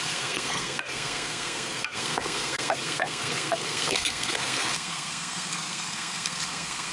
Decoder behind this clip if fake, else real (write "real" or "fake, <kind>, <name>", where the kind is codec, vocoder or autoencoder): fake, codec, SNAC